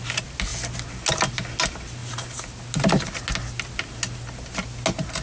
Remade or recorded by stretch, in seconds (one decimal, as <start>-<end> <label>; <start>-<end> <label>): 0.0-5.2 recorded